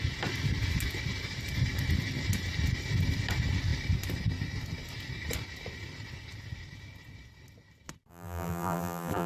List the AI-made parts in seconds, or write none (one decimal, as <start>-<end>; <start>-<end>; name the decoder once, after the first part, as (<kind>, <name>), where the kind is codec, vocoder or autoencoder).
8.1-9.3 (vocoder, BigVGAN v2)